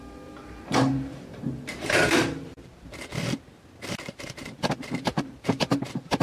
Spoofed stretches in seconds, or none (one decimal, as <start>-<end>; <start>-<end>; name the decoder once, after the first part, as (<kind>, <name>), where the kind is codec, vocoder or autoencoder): 0.0-3.1 (vocoder, BigVGAN v2); 3.9-6.2